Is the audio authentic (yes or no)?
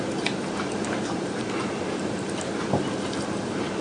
no